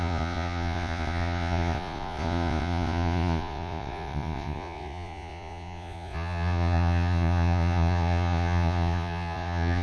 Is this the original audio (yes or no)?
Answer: no